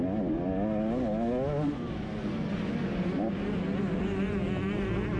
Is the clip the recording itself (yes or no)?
yes